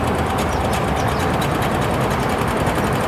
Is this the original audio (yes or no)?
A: yes